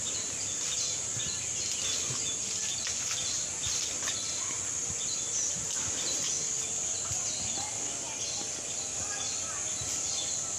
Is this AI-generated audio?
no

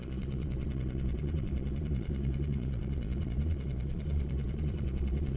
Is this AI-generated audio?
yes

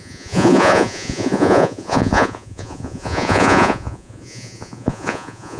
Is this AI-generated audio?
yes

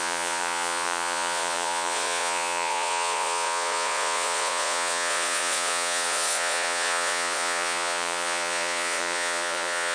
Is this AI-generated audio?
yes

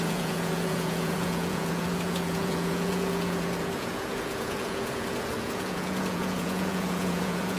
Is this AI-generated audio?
yes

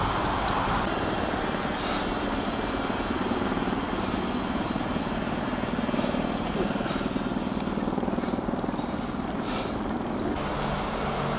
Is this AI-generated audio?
no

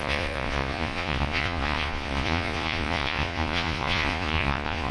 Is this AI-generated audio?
yes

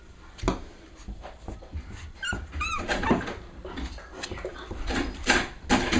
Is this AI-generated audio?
no